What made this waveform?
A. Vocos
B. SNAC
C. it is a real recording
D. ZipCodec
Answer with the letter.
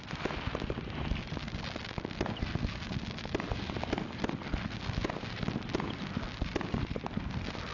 C